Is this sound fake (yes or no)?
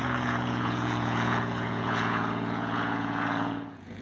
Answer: yes